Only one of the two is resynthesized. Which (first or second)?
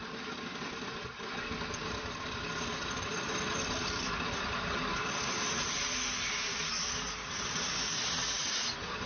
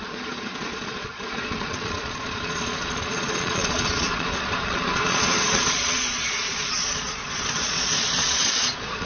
second